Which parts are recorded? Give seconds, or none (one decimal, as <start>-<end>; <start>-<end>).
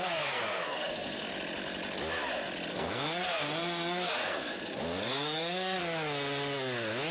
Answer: 1.3-2.7; 5.8-7.1